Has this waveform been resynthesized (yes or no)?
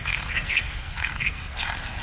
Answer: yes